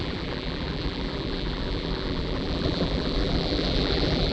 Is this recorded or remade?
remade